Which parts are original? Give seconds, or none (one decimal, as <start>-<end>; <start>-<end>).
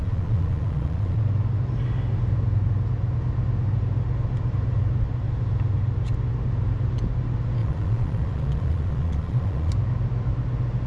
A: 1.2-7.6; 9.7-10.9